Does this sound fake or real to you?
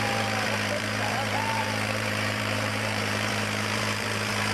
fake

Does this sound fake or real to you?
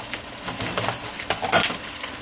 fake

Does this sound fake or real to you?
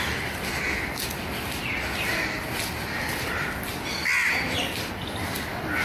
real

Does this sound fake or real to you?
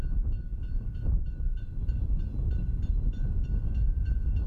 fake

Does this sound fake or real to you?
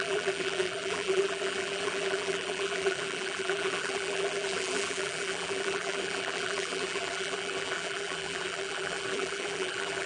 fake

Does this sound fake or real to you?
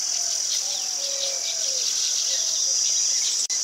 fake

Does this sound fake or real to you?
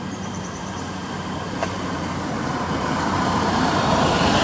fake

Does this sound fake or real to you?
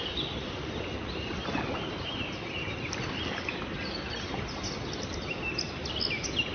real